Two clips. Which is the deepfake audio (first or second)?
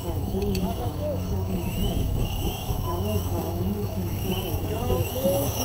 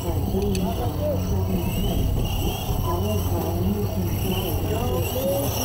first